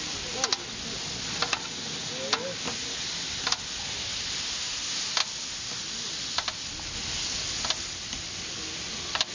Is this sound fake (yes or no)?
no